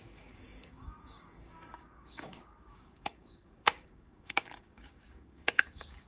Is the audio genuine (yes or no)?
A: no